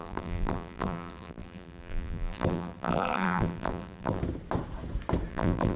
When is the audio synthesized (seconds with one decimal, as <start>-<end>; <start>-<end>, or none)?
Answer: 0.0-4.2; 5.3-5.8